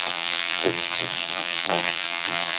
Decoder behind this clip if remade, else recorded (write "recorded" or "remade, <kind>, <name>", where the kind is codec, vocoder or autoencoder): remade, vocoder, BigVGAN v2